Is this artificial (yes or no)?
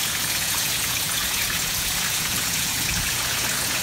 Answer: yes